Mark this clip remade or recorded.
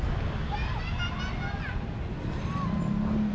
recorded